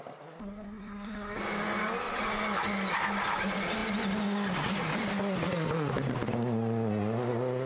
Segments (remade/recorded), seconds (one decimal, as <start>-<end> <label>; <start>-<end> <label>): 0.0-0.4 recorded; 0.4-1.4 remade; 1.4-7.7 recorded